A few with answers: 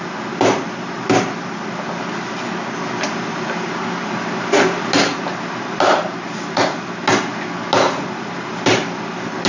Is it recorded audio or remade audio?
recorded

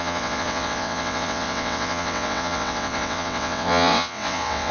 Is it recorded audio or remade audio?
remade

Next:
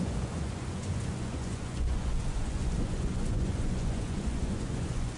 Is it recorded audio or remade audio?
remade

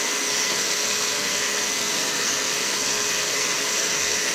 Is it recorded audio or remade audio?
remade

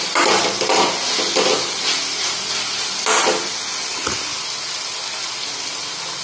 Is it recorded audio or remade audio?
recorded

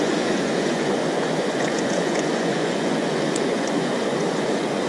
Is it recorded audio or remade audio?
remade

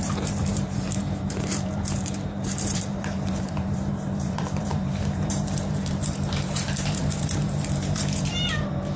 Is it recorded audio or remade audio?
remade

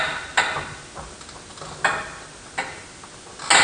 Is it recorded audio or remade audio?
recorded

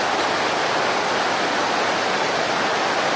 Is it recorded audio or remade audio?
recorded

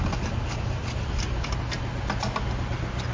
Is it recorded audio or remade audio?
recorded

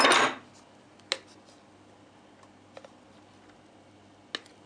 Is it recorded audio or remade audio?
recorded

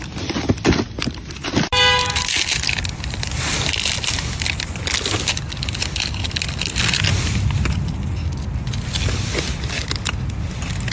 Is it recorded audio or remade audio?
recorded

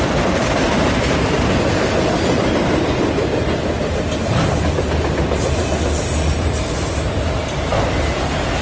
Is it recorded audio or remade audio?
recorded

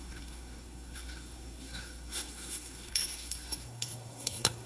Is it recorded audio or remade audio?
remade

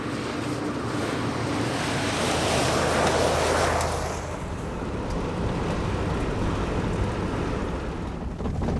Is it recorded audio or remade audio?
recorded